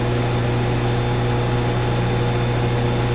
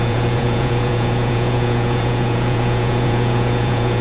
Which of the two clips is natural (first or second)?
first